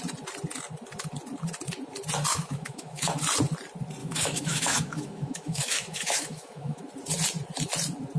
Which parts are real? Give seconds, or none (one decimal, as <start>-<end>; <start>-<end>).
0.0-2.3; 3.2-4.0; 6.8-8.2